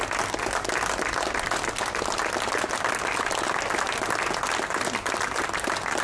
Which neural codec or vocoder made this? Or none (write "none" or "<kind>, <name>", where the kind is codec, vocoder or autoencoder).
none